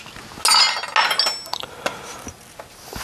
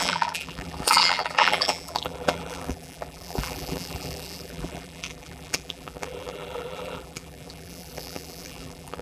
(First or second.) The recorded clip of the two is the first